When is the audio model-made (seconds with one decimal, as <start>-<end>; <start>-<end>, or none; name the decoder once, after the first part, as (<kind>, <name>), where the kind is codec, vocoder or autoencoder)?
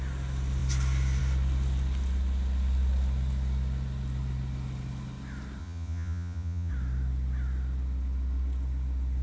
5.6-6.7 (vocoder, Vocos)